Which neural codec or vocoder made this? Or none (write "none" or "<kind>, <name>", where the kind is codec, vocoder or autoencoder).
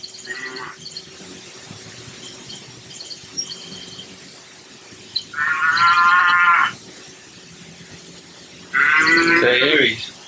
vocoder, BigVGAN v2